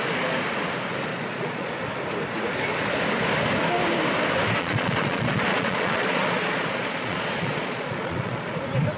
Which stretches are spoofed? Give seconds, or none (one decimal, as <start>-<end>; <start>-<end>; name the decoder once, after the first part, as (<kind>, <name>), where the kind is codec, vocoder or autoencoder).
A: 1.1-1.7 (vocoder, Vocos); 4.6-8.6